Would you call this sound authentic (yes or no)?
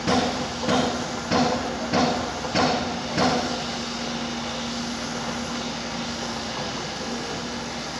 yes